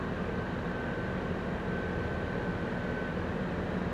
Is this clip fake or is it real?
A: real